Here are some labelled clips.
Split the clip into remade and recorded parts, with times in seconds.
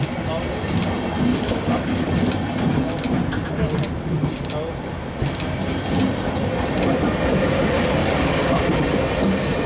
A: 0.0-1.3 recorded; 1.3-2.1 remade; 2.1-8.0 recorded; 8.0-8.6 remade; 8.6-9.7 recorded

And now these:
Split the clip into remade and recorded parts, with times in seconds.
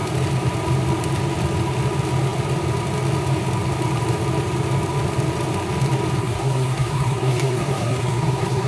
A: 0.0-6.2 recorded; 6.2-8.7 remade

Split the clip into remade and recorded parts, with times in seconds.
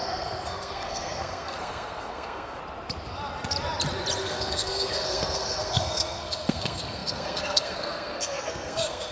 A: 0.0-2.6 remade; 2.6-4.2 recorded; 4.2-9.1 remade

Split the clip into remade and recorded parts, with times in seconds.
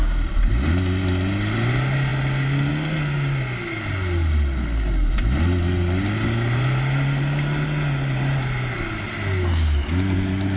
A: 0.0-10.6 recorded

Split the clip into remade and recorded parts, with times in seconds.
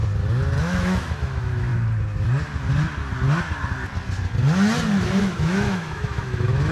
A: 0.0-0.6 recorded; 0.6-1.7 remade; 1.7-5.2 recorded; 5.2-6.7 remade